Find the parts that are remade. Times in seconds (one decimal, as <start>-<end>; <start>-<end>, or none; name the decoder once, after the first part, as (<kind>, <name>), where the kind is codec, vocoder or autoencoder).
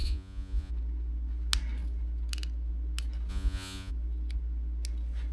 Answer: 0.0-0.7 (vocoder, Vocos); 3.3-3.9